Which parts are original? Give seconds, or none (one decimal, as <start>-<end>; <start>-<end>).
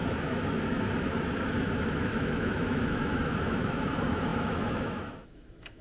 none